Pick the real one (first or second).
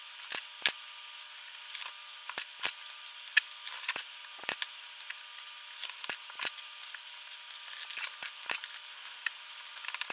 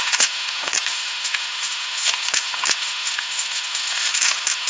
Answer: first